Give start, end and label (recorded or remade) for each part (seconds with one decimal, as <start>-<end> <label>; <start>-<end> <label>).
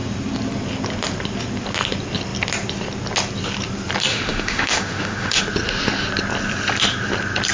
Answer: 0.0-4.1 recorded; 4.1-5.4 remade; 5.4-7.5 recorded